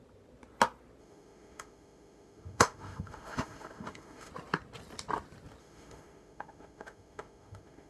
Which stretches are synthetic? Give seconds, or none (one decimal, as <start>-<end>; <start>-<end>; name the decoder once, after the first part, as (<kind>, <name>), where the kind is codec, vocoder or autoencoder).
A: 1.0-4.3 (autoencoder, DAC-VAE); 5.6-7.9